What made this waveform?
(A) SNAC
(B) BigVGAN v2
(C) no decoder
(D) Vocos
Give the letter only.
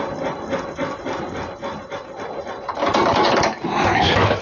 C